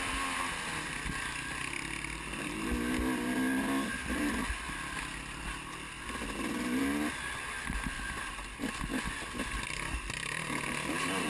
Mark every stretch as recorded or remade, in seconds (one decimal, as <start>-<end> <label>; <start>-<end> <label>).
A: 0.0-11.3 recorded